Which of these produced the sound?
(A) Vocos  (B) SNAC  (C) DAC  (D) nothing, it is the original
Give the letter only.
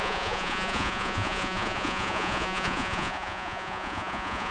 A